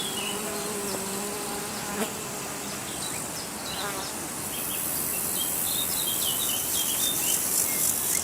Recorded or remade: recorded